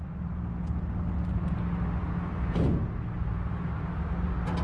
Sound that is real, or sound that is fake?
real